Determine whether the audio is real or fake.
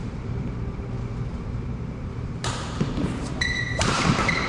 fake